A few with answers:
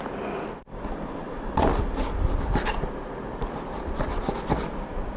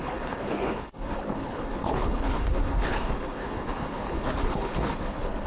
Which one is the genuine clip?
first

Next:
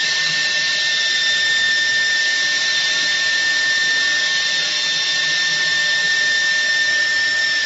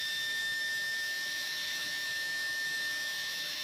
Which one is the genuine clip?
first